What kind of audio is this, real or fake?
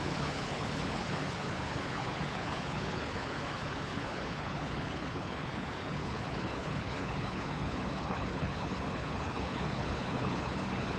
fake